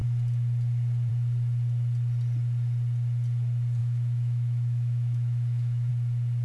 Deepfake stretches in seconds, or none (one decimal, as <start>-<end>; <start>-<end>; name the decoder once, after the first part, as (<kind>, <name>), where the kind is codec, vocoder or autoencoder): 3.8-5.9 (autoencoder, DAC-VAE)